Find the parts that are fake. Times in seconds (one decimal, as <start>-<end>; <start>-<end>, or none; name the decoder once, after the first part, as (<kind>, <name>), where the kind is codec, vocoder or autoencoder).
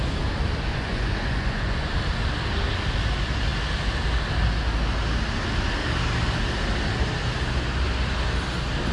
0.7-1.9 (vocoder, Vocos)